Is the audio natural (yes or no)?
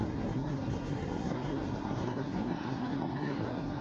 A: no